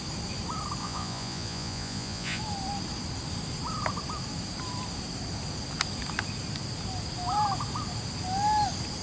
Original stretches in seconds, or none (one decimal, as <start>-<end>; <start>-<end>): 0.0-0.8; 2.4-9.0